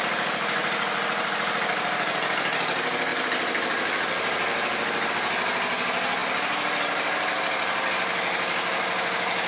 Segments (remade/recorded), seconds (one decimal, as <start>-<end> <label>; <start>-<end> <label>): 0.0-9.5 recorded